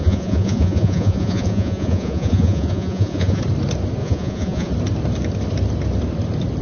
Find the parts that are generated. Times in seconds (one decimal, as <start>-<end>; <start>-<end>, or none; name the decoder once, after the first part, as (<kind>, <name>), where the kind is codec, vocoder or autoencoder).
0.0-3.4 (vocoder, Vocos); 4.0-4.7